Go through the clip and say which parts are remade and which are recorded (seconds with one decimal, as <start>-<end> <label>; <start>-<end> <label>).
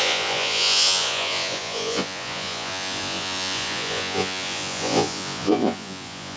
0.0-6.4 remade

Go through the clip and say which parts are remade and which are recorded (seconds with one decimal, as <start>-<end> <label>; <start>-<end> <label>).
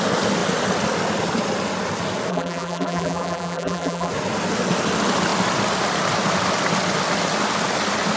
0.0-2.3 recorded; 2.3-4.1 remade; 4.1-8.2 recorded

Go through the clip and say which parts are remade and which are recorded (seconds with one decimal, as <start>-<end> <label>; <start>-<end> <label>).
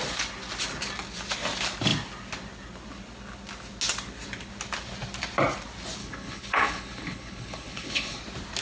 0.0-6.0 recorded; 6.0-8.2 remade; 8.2-8.6 recorded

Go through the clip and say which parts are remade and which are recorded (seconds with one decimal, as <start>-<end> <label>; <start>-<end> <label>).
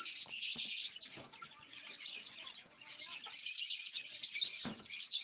0.0-2.9 remade; 2.9-3.6 recorded; 3.6-5.2 remade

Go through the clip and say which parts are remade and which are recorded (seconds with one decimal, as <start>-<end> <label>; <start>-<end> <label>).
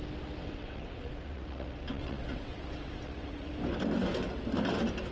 0.0-0.4 recorded; 0.4-3.5 remade; 3.5-5.1 recorded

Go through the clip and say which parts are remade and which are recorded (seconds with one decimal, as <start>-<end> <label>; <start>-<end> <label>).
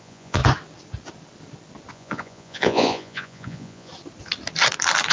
0.0-0.4 remade; 0.4-1.9 recorded; 1.9-3.9 remade; 3.9-5.1 recorded